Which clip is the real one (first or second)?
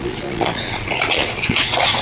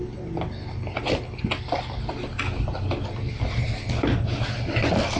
second